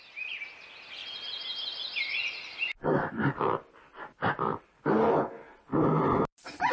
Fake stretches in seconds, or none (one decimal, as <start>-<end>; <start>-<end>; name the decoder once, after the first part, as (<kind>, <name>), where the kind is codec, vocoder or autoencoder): 1.0-5.0 (vocoder, BigVGAN v2); 5.7-6.7